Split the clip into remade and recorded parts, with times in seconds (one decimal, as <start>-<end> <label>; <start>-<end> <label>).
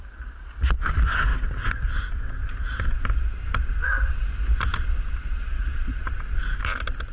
0.0-7.1 recorded